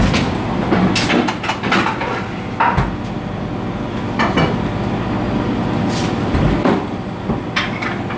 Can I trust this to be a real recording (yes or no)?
yes